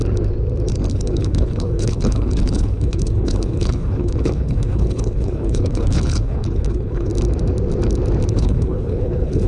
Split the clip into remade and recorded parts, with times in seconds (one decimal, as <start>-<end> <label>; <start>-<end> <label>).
0.0-0.9 recorded; 0.9-7.1 remade; 7.1-8.3 recorded; 8.3-9.5 remade